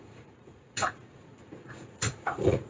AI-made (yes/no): yes